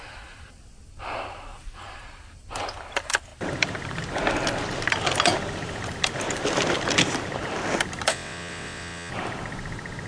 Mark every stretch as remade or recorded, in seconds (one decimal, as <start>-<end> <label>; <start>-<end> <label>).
0.0-8.1 recorded; 8.1-9.1 remade; 9.1-10.1 recorded